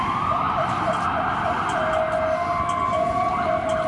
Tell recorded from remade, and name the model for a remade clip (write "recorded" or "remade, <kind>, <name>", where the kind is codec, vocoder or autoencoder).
recorded